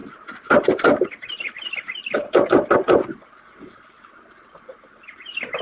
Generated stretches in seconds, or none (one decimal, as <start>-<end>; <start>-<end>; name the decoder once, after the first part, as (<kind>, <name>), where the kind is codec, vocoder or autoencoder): none